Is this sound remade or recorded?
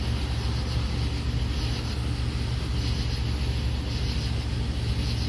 recorded